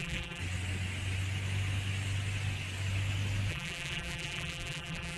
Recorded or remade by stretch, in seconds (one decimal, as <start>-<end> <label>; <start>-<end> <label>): 0.0-0.4 remade; 0.4-3.5 recorded; 3.5-5.2 remade